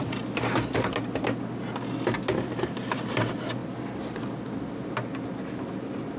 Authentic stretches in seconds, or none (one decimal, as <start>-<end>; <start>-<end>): 0.0-6.2